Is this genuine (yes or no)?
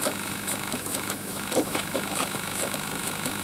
no